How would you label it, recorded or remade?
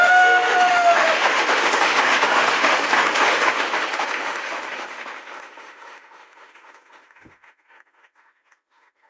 remade